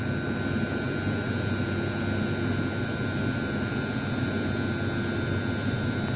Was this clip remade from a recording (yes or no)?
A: no